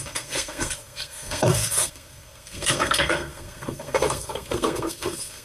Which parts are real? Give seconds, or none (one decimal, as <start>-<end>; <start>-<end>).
none